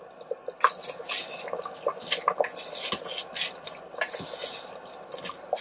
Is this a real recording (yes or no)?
yes